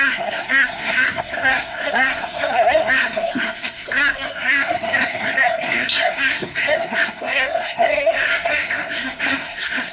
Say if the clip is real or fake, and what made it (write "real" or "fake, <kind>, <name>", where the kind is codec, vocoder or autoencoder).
fake, codec, SNAC